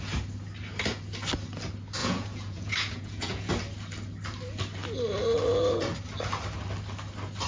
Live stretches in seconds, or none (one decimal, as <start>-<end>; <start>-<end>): 0.0-2.0; 3.5-7.5